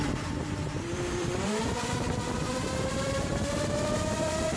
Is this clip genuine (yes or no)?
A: no